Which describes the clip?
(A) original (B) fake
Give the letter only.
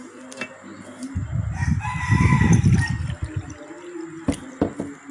A